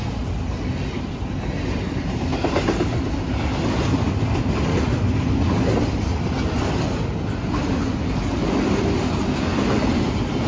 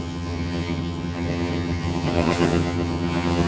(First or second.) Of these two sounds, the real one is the first